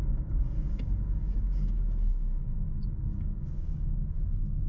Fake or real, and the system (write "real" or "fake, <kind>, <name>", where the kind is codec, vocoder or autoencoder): fake, codec, DAC